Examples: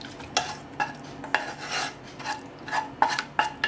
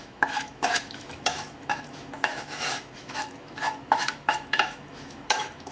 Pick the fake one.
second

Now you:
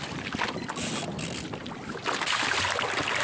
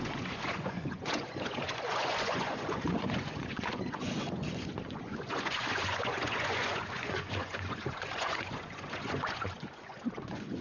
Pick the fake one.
second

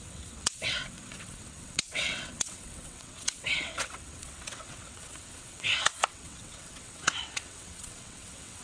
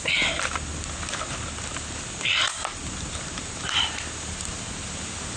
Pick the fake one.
first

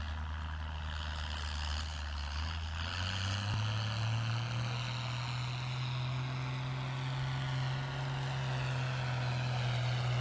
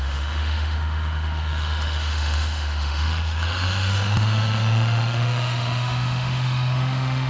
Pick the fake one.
second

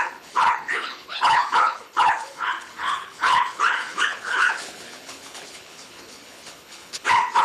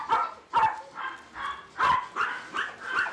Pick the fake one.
first